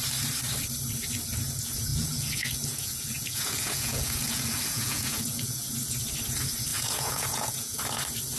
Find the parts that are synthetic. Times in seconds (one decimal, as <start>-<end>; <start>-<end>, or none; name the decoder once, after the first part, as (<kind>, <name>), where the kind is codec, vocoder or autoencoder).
1.9-5.7 (vocoder, Vocos); 6.7-7.8